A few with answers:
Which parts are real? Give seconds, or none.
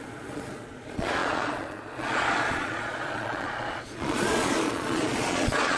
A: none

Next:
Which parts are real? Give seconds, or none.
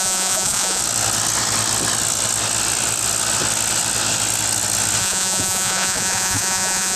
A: 0.8-5.0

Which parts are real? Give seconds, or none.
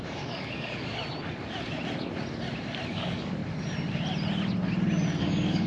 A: 1.0-2.9; 3.4-5.2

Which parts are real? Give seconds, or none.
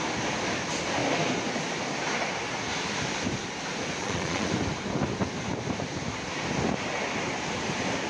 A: 0.0-4.0; 4.5-8.1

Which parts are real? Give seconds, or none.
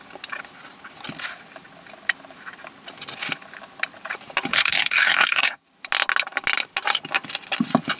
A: 0.0-4.5; 5.6-8.0